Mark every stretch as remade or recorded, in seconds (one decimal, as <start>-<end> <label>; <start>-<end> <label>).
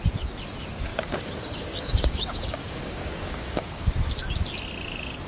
0.0-0.9 recorded; 0.9-4.1 remade; 4.1-5.3 recorded